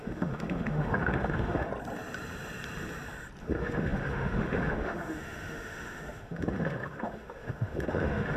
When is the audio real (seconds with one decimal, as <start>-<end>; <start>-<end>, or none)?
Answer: 1.7-3.4